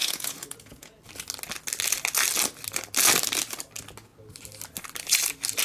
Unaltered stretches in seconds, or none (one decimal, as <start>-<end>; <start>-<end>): 1.0-5.6